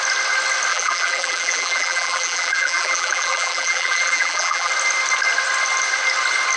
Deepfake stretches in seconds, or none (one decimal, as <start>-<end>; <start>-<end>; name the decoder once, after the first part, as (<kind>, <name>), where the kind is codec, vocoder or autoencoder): 0.7-4.7 (vocoder, BigVGAN v2)